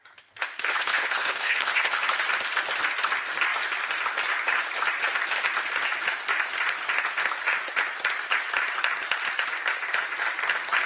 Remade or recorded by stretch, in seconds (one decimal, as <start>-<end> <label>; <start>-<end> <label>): 0.0-0.7 recorded; 0.7-2.0 remade; 2.0-10.9 recorded